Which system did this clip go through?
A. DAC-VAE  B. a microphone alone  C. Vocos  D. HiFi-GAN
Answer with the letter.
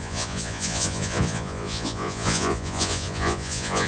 C